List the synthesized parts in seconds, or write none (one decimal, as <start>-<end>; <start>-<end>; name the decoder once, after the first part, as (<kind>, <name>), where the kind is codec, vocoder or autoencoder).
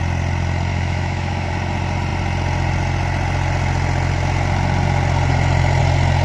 0.7-1.5 (autoencoder, DAC-VAE)